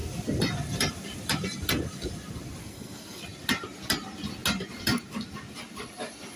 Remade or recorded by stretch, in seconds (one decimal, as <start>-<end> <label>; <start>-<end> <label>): 0.0-2.6 recorded; 2.6-3.2 remade; 3.2-6.4 recorded